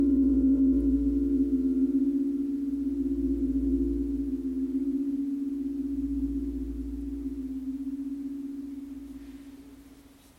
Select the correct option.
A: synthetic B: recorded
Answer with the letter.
B